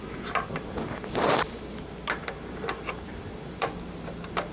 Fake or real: real